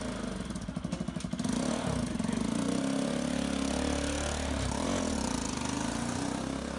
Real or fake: real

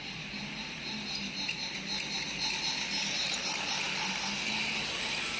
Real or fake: real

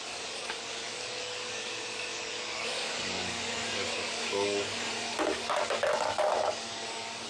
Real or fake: fake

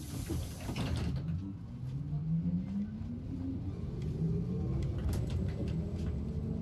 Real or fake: real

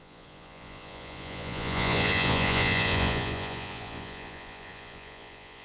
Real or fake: fake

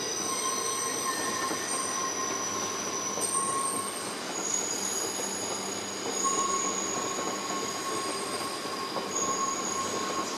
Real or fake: real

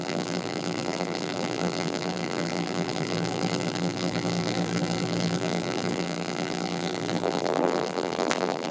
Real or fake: fake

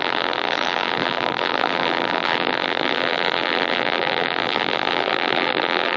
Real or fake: fake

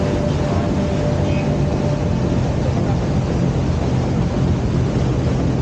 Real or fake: real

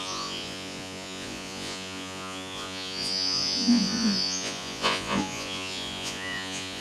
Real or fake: fake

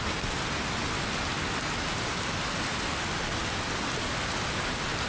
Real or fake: real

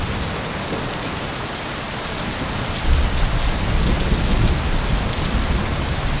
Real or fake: real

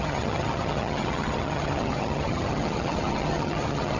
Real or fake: fake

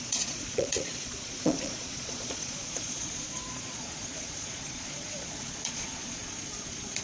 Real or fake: fake